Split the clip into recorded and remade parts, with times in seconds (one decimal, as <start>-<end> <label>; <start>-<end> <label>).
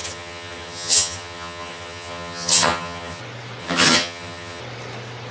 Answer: 0.0-3.2 remade; 3.2-3.6 recorded; 3.6-4.6 remade; 4.6-5.3 recorded